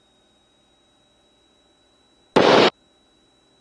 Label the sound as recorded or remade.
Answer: recorded